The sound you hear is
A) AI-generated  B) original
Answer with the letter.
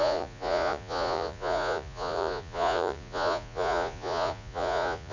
A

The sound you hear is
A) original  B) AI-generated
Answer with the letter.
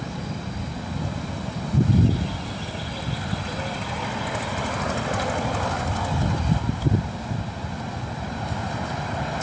A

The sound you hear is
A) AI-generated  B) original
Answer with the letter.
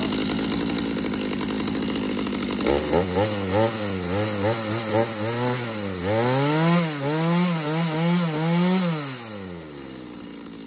B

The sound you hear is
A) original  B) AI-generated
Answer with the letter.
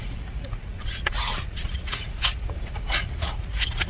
B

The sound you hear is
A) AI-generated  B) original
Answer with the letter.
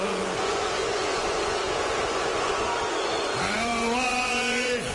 A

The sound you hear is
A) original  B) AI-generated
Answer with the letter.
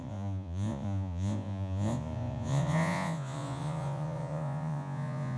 B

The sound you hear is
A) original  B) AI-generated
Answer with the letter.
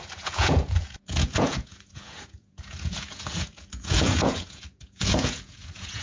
B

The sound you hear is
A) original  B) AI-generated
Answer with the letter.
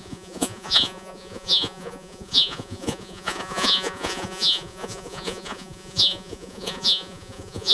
B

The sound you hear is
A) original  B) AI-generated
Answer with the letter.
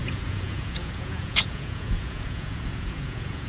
B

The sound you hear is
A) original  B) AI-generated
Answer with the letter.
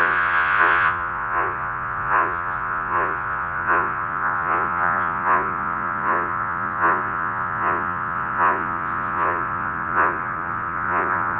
B